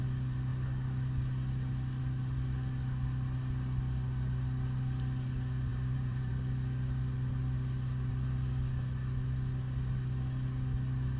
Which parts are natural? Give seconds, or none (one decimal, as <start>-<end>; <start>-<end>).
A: 0.0-5.7; 6.3-11.2